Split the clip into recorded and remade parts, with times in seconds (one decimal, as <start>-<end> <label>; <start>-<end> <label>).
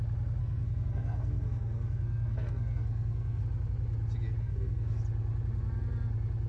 0.0-0.4 recorded; 0.4-3.4 remade; 3.4-4.4 recorded; 4.4-5.0 remade; 5.0-6.5 recorded